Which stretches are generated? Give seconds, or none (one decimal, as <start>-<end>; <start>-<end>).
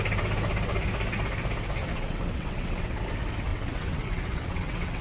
1.9-3.0; 3.5-5.0